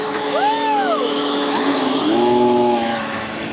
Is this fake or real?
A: fake